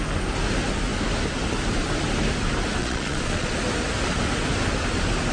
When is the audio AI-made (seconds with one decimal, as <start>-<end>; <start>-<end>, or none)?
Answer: 2.8-3.5